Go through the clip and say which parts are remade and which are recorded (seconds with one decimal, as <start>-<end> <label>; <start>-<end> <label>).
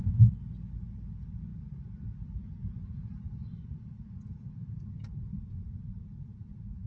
0.0-6.9 recorded